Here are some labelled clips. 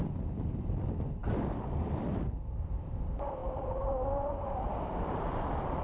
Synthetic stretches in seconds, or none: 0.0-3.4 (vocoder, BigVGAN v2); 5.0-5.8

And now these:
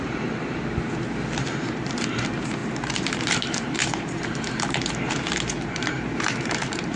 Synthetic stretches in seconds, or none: 0.0-0.4 (vocoder, BigVGAN v2); 1.5-7.0

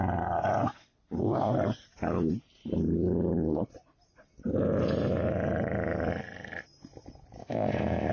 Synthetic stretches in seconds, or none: 7.4-8.1 (codec, ZipCodec)